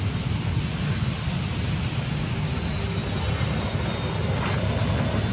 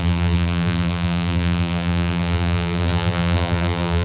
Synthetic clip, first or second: second